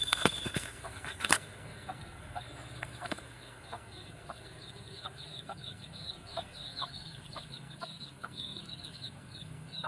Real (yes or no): no